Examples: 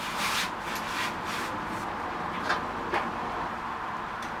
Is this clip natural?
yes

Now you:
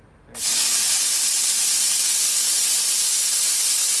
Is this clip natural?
yes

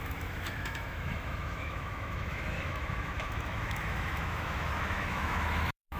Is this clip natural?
no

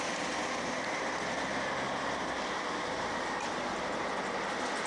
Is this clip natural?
yes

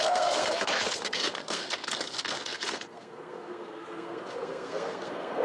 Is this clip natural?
no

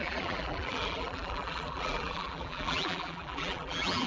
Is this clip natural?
no